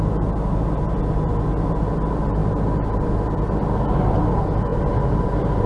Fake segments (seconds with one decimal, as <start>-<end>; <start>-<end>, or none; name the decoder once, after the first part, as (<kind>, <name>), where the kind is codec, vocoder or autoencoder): none